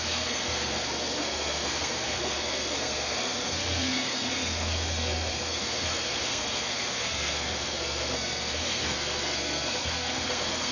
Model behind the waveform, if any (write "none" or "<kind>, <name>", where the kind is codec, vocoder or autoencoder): codec, SNAC